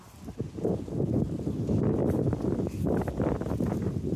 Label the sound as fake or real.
real